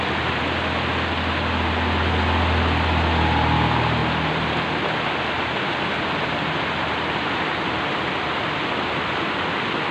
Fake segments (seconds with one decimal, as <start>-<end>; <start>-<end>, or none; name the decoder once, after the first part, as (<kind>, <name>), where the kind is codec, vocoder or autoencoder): none